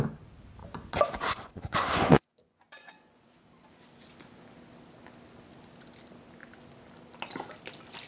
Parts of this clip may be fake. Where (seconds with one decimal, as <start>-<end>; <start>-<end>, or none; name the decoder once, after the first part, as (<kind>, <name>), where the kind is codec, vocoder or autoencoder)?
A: 0.6-3.4 (vocoder, Vocos)